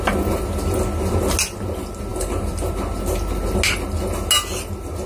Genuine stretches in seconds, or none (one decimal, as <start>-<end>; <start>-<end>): 0.0-2.1; 2.7-5.1